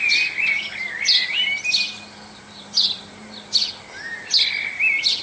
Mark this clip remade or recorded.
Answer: recorded